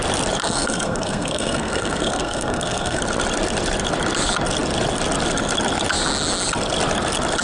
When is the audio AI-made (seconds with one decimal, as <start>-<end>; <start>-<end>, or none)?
0.4-3.0